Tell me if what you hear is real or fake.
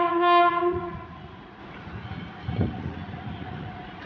fake